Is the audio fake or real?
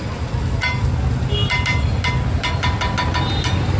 real